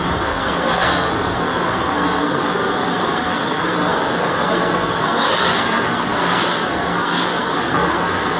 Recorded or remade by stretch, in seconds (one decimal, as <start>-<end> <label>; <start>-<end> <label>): 0.0-8.4 remade